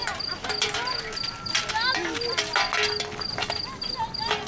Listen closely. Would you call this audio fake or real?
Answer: real